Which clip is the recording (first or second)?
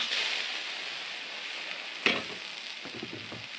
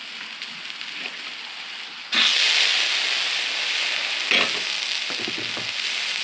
second